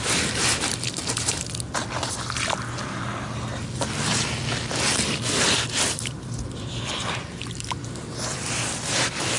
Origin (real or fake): real